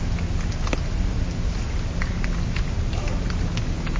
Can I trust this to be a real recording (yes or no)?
yes